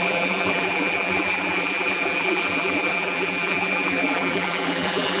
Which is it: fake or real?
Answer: fake